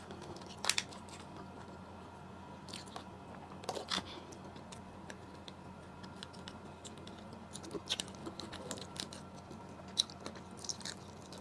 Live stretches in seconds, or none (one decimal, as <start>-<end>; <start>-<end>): 0.0-11.4